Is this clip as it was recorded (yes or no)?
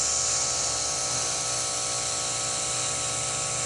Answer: yes